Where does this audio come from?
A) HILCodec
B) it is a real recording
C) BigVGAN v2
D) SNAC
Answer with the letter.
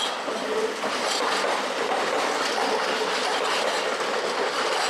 B